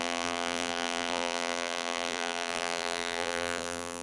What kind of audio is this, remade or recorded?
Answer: remade